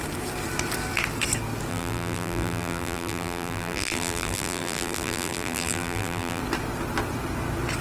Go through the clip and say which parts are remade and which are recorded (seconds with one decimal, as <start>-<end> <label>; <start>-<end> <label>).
0.0-1.7 recorded; 1.7-6.4 remade; 6.4-7.8 recorded